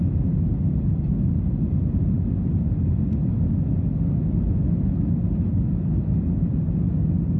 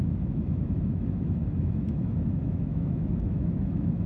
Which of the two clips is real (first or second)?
first